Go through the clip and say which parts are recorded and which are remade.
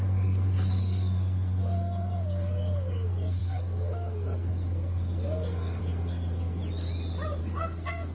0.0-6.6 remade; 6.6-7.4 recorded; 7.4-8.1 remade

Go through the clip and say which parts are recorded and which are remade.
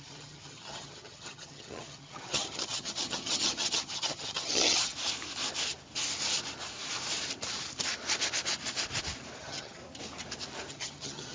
0.0-4.9 remade; 4.9-9.4 recorded; 9.4-9.8 remade; 9.8-10.7 recorded; 10.7-11.3 remade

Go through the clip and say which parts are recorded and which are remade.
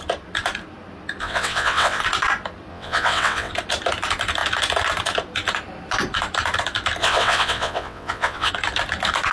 0.0-1.2 recorded; 1.2-2.0 remade; 2.0-2.7 recorded; 2.7-3.5 remade; 3.5-7.0 recorded; 7.0-8.5 remade; 8.5-9.3 recorded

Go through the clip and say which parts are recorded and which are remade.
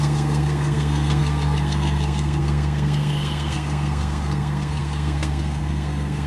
0.0-6.3 remade